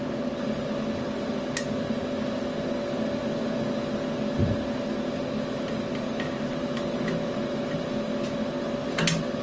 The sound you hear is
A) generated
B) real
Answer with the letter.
B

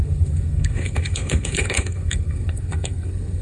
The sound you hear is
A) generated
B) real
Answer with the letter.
A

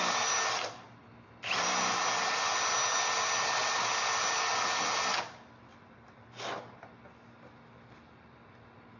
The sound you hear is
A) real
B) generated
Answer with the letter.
A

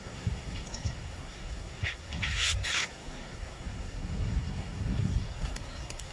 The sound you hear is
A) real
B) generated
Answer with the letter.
B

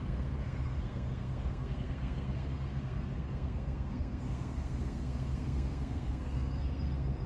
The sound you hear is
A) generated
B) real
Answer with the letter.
A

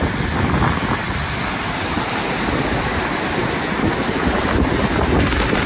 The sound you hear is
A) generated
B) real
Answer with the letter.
B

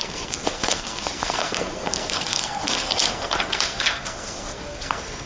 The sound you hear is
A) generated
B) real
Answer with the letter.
A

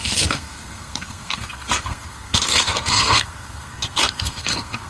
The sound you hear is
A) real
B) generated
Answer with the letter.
B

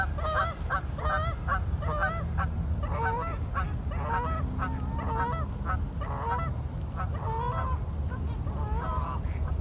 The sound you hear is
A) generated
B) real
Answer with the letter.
B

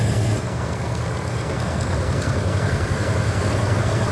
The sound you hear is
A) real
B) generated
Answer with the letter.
B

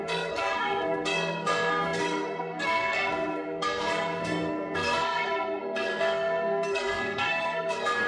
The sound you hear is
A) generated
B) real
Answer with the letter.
A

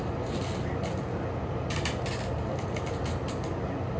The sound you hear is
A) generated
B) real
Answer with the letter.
B